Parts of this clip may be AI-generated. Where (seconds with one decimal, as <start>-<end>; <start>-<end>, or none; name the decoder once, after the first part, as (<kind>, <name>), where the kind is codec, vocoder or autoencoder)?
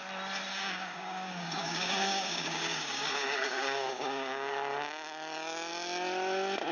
0.5-4.5 (codec, DAC)